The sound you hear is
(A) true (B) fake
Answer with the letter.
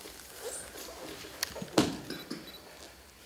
A